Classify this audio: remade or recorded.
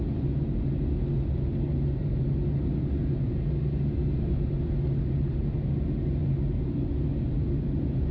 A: recorded